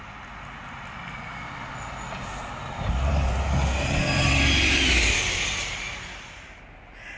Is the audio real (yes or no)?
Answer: yes